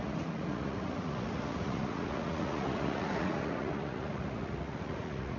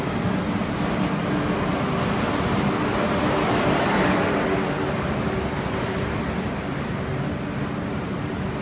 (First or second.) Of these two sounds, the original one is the second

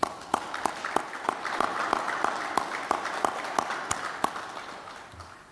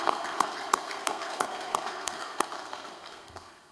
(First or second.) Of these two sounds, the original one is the first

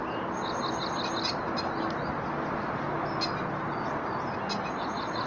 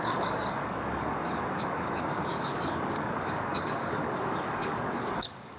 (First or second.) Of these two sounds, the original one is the first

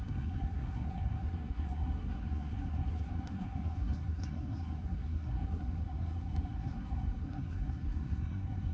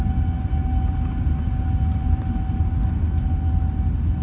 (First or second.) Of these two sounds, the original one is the second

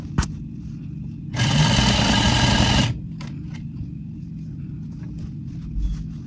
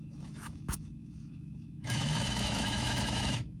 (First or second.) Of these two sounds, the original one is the first